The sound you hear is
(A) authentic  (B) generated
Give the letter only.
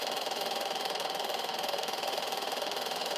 B